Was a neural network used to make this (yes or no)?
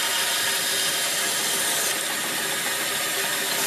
no